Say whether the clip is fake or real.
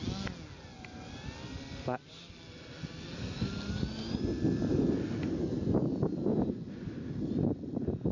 real